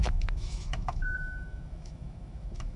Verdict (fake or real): fake